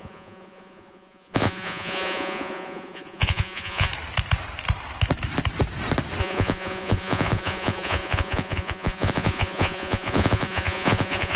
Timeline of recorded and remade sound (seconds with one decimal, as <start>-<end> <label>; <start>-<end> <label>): 0.0-3.9 remade; 3.9-6.2 recorded; 6.2-11.4 remade